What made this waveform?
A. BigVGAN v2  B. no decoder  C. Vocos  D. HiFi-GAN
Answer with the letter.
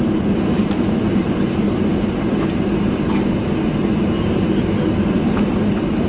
B